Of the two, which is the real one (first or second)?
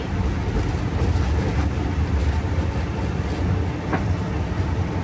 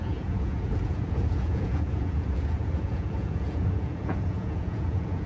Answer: first